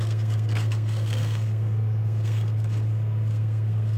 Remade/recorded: remade